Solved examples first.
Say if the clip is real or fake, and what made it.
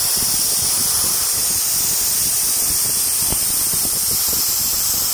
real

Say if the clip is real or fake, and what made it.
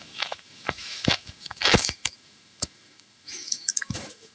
fake, autoencoder, DAC-VAE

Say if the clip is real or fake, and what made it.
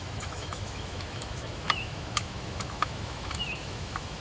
fake, autoencoder, DAC-VAE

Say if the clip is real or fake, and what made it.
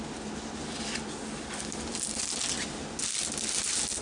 real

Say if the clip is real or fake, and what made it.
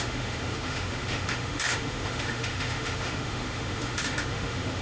fake, autoencoder, DAC-VAE